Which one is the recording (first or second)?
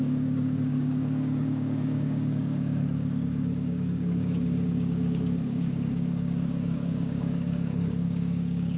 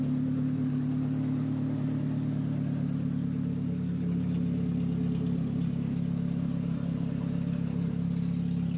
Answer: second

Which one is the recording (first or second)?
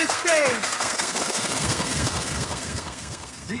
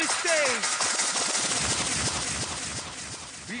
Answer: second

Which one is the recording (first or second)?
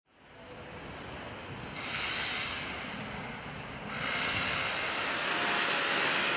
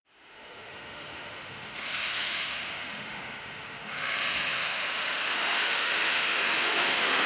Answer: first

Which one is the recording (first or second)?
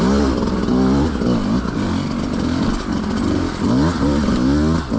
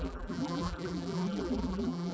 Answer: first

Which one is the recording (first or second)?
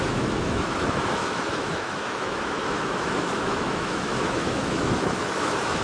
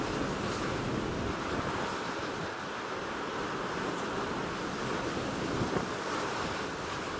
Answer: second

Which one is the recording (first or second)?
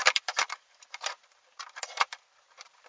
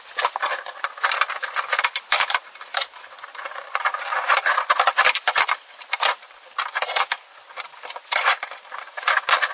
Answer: second